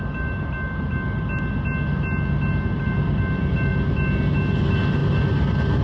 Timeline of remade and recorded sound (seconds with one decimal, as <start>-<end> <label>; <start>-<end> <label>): 0.0-5.8 recorded